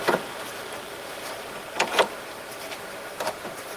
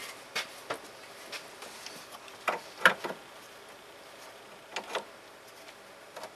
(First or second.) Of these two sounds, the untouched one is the second